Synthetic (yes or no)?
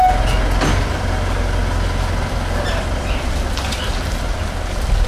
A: no